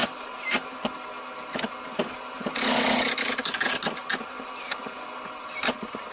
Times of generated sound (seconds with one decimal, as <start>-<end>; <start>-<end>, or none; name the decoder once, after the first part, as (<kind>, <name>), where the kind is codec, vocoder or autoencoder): none